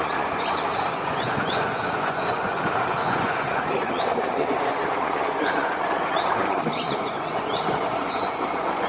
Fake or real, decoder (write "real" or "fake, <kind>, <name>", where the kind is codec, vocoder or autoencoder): fake, vocoder, Vocos